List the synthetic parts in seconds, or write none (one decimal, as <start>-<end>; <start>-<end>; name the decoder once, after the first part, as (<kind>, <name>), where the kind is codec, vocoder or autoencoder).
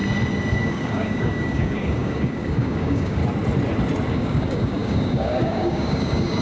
0.6-3.2 (codec, DAC); 4.1-6.4